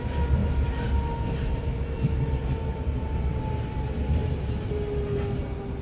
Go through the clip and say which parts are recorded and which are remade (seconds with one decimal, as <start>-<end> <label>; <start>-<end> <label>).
0.0-5.8 recorded